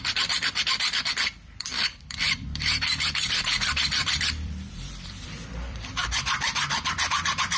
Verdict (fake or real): fake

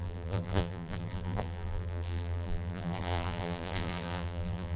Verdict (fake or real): fake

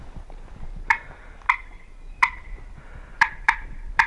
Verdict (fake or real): fake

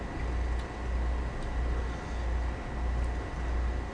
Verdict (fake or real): real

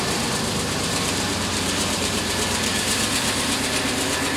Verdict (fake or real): fake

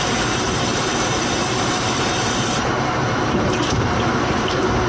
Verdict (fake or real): fake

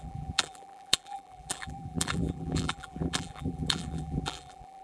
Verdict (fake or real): fake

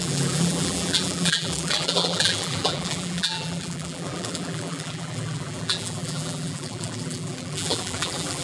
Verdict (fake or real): fake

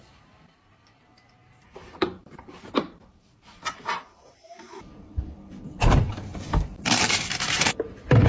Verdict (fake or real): fake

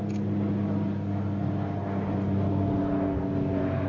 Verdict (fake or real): real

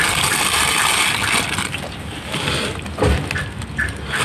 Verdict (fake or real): real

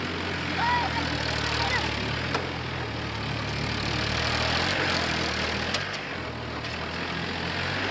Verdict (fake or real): real